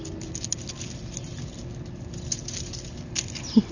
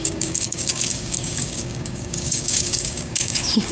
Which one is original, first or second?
first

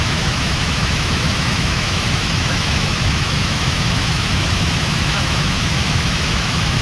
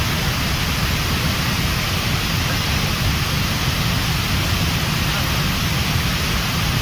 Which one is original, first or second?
second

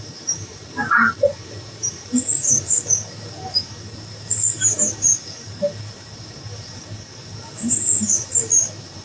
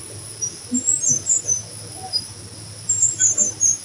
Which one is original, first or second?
second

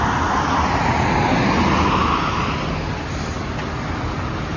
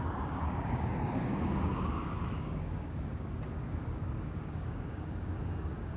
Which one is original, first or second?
first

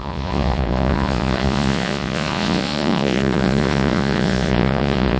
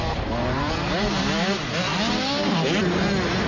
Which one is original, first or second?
second